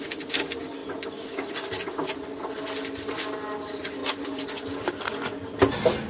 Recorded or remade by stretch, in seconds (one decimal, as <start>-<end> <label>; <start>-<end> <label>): 0.0-6.1 recorded